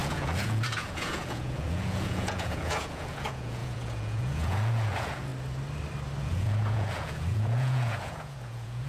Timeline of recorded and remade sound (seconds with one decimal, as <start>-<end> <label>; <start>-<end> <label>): 0.0-5.3 remade; 5.3-6.2 recorded; 6.2-8.9 remade